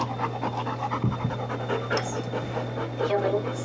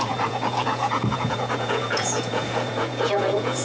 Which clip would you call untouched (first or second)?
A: first